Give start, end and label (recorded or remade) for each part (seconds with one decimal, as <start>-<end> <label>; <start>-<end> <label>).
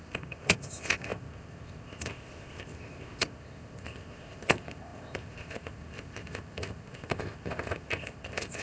0.0-8.6 remade